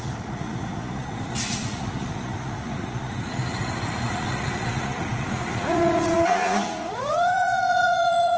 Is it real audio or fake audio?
fake